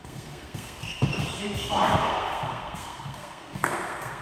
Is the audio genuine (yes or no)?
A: no